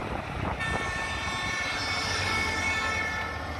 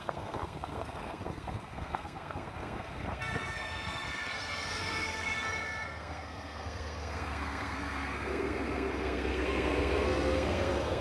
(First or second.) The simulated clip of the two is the second